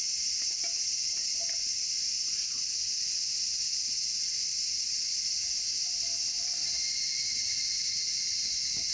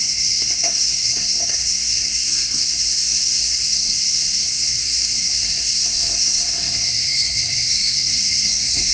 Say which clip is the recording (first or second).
first